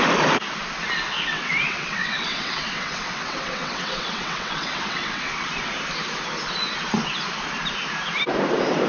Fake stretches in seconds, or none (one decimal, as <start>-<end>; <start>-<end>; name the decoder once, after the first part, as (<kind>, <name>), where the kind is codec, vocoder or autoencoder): 1.3-5.7 (vocoder, WaveNeXt)